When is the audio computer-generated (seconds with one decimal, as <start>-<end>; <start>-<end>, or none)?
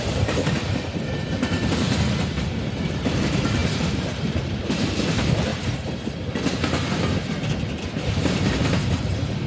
0.0-1.6; 2.6-5.5; 7.8-9.5